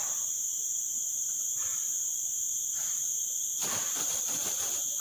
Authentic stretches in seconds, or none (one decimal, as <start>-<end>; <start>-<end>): 0.0-1.7

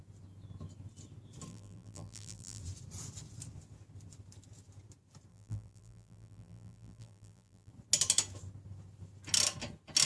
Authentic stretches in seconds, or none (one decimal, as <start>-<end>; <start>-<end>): 0.0-1.5; 2.6-5.3; 7.7-10.1